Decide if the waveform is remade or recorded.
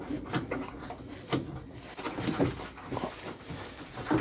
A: recorded